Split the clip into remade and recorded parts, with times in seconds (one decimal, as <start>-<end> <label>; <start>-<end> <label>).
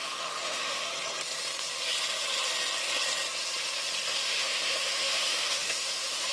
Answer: 0.0-0.9 remade; 0.9-4.1 recorded; 4.1-6.3 remade